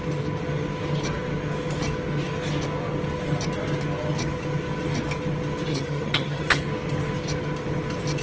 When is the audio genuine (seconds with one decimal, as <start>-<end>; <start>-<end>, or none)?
0.0-5.7; 6.6-8.2